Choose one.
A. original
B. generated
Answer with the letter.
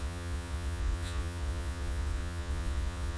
B